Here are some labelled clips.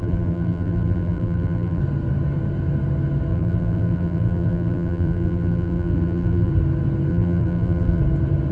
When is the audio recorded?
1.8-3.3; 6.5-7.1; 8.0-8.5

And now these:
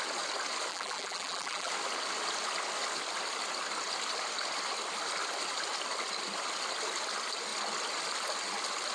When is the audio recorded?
0.0-0.7; 1.7-8.9

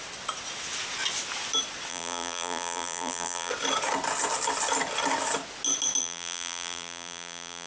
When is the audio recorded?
0.0-1.9; 3.5-6.0

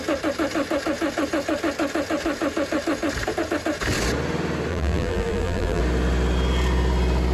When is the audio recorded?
0.0-4.7; 5.8-7.3